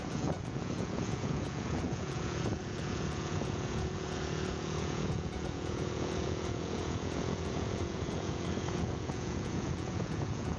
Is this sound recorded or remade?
remade